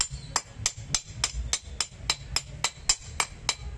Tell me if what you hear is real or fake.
real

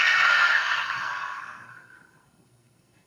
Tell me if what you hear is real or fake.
fake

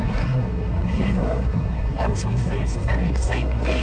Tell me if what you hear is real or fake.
fake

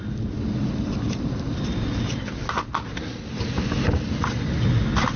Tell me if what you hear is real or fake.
real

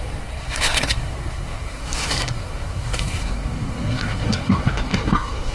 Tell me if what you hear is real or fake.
fake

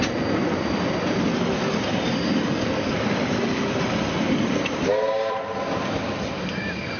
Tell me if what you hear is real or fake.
real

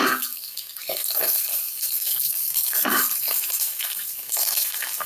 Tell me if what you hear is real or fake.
fake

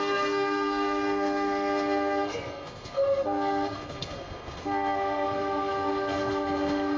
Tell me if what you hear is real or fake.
fake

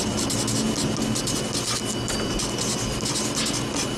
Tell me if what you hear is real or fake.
real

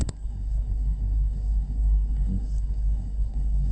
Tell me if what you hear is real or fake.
fake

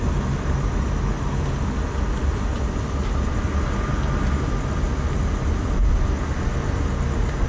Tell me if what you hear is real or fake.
real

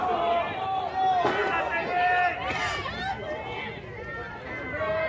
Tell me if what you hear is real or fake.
real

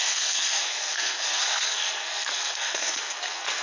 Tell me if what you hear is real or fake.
fake